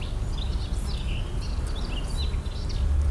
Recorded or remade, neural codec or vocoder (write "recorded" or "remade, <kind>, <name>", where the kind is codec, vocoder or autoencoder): recorded